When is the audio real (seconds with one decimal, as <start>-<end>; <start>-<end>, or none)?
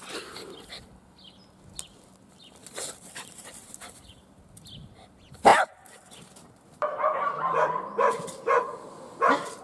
0.0-2.6; 4.3-5.5; 7.8-9.6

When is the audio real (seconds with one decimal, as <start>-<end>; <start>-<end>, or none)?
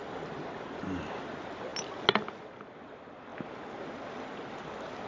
1.7-2.7; 3.3-3.8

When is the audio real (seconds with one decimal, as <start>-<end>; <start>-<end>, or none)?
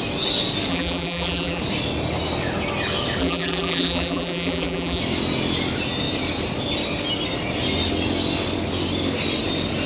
0.0-0.7; 1.6-3.2; 5.0-9.9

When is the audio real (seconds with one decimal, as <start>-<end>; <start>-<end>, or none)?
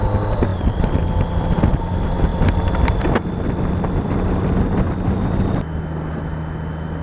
0.0-0.5; 1.7-2.3; 5.8-7.0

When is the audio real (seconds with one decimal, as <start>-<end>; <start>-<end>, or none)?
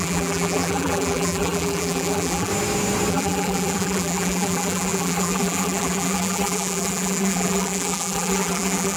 2.5-3.1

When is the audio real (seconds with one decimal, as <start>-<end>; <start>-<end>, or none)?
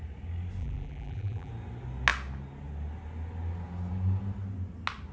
0.0-0.6; 1.5-5.1